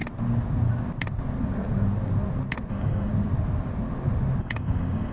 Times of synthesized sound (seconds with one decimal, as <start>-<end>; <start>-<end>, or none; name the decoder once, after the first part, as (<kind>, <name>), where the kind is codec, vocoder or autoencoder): 2.7-3.1 (codec, DAC); 4.4-5.1